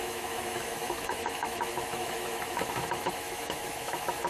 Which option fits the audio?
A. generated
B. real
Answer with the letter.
A